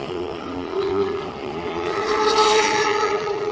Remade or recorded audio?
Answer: remade